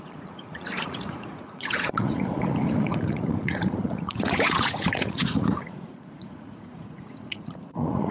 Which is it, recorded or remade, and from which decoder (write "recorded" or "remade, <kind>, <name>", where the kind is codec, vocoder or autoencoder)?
remade, vocoder, Vocos